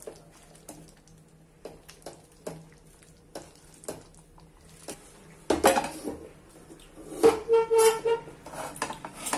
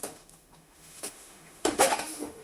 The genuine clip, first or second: first